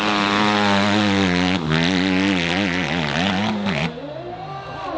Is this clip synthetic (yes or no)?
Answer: no